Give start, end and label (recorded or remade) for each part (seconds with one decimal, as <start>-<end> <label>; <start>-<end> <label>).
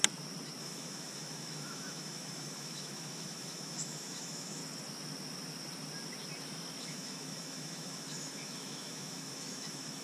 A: 0.0-0.6 recorded; 0.6-4.6 remade; 4.6-6.8 recorded; 6.8-10.0 remade